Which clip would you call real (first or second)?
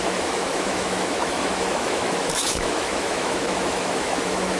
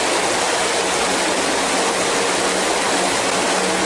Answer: second